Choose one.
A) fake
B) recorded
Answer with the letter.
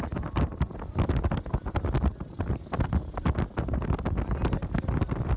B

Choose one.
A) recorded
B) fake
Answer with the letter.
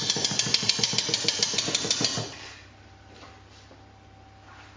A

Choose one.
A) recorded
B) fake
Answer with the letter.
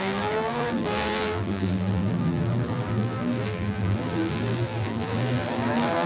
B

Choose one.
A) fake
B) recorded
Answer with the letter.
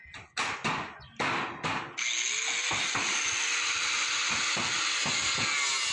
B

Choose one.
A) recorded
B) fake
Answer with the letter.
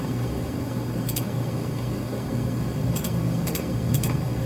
B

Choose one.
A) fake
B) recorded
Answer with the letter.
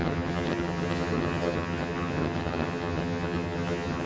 A